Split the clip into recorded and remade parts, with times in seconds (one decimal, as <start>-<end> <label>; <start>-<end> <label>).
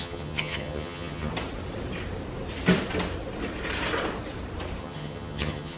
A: 0.0-1.3 remade; 1.3-4.8 recorded; 4.8-5.8 remade